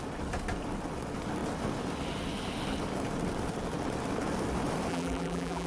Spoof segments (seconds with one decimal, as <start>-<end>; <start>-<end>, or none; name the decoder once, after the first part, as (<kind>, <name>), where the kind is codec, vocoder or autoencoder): 4.9-5.7 (vocoder, BigVGAN v2)